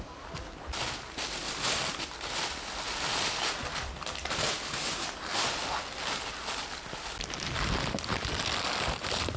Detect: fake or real real